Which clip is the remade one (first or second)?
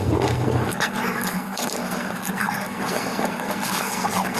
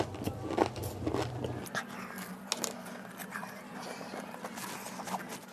first